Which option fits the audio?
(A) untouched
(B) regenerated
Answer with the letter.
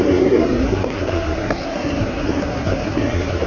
B